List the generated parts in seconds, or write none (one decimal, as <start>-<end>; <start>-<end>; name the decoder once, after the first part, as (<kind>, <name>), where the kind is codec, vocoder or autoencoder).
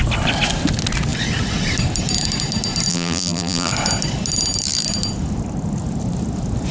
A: 2.9-3.7 (vocoder, BigVGAN v2)